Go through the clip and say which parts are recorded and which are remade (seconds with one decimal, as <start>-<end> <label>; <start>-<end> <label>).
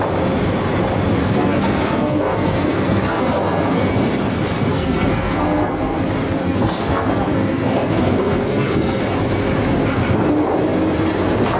0.0-1.2 recorded; 1.2-3.9 remade; 3.9-4.7 recorded; 4.7-6.0 remade; 6.0-6.4 recorded; 6.4-9.0 remade; 9.0-11.6 recorded